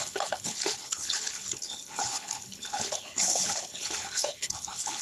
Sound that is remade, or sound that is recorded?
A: remade